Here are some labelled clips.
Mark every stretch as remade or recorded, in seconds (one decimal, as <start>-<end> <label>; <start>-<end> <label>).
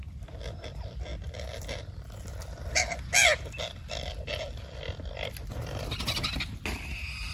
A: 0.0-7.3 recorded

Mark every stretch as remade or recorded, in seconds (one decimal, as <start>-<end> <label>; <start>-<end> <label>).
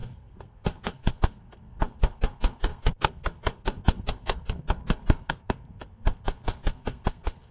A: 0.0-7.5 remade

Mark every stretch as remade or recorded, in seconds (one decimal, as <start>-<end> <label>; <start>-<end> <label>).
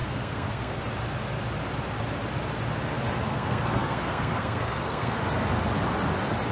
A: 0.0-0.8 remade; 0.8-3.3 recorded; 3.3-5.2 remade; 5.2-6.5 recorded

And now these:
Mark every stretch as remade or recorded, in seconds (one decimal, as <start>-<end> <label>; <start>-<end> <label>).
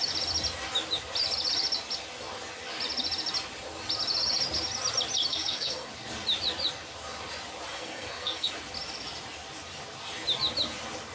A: 0.0-5.3 recorded; 5.3-5.9 remade; 5.9-7.7 recorded; 7.7-8.5 remade; 8.5-11.1 recorded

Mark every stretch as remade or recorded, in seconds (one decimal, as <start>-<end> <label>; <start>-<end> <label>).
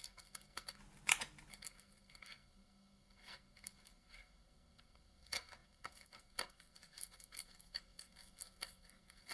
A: 0.0-0.8 remade; 0.8-1.5 recorded; 1.5-9.3 remade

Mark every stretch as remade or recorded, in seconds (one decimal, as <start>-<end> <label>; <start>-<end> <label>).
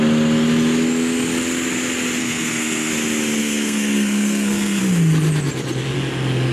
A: 0.0-2.2 recorded; 2.2-2.9 remade; 2.9-3.4 recorded; 3.4-4.8 remade; 4.8-6.5 recorded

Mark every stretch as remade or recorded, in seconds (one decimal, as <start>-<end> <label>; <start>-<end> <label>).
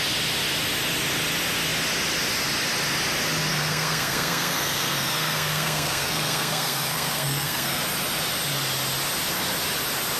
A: 0.0-3.5 recorded; 3.5-7.8 remade; 7.8-10.2 recorded